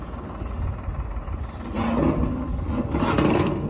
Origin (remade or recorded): recorded